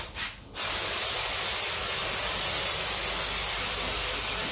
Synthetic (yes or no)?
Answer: no